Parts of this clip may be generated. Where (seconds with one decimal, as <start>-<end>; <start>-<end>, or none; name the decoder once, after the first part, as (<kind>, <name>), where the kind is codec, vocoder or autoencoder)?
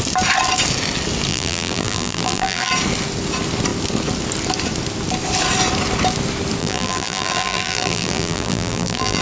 1.3-2.7 (vocoder, BigVGAN v2); 6.6-9.2